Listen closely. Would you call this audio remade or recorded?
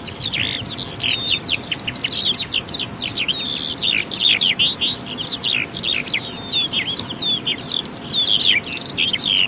recorded